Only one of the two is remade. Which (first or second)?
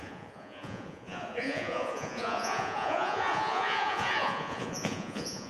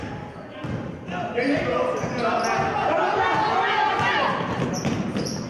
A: first